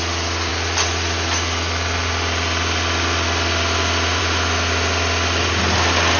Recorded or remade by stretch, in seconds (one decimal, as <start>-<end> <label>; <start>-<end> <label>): 0.0-6.2 recorded